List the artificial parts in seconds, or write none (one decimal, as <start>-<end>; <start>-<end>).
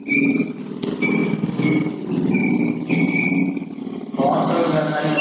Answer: none